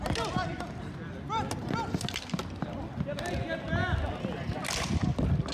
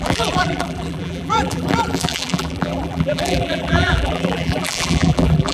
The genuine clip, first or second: first